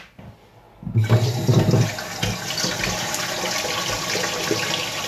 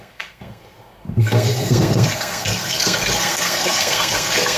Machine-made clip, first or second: second